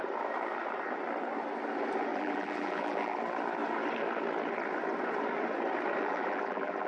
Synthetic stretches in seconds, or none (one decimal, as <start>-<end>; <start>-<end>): 2.1-3.2; 6.0-6.9